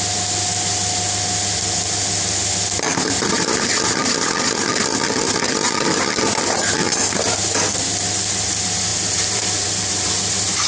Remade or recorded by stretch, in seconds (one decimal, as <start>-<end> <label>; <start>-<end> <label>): 0.0-2.9 recorded; 2.9-3.5 remade; 3.5-8.9 recorded; 8.9-10.1 remade; 10.1-10.7 recorded

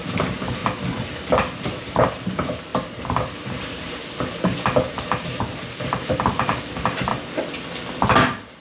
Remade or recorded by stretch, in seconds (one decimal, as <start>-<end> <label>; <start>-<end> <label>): 0.0-0.6 remade; 0.6-1.8 recorded; 1.8-2.7 remade; 2.7-3.6 recorded; 3.6-4.0 remade; 4.0-4.9 recorded; 4.9-7.1 remade; 7.1-8.6 recorded

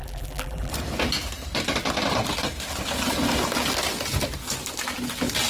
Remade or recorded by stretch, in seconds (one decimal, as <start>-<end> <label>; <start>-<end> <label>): 0.0-0.7 remade; 0.7-5.5 recorded

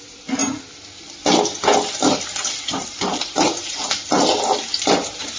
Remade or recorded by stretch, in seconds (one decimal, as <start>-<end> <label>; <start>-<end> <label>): 0.0-0.4 remade; 0.4-2.6 recorded; 2.6-3.8 remade; 3.8-4.8 recorded; 4.8-5.4 remade